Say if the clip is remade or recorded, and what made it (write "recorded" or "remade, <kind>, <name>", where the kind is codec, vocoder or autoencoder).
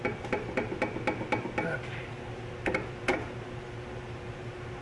recorded